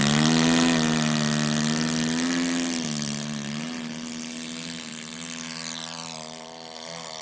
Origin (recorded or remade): recorded